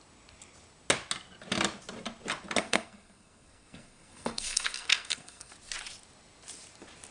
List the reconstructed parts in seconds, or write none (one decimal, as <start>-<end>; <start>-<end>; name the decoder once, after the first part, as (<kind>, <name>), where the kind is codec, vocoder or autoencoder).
2.6-5.5 (codec, SNAC)